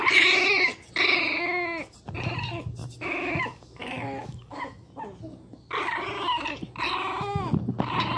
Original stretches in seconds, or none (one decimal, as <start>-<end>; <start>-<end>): 0.0-2.8; 4.9-8.2